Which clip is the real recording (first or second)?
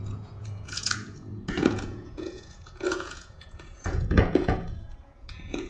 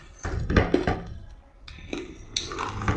second